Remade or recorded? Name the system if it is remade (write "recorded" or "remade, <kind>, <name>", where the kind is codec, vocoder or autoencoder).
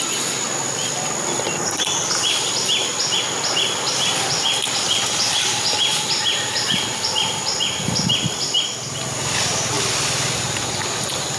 recorded